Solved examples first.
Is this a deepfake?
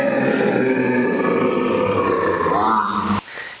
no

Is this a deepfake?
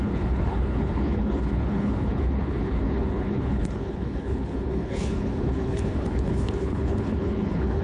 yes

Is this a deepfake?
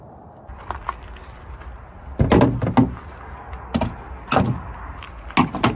no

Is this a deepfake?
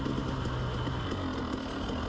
no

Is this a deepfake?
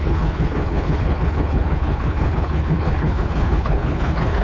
yes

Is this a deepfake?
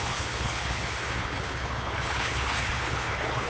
yes